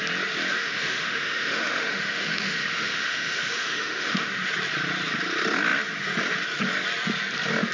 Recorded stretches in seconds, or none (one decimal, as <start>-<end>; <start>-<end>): 0.0-0.5; 4.5-7.7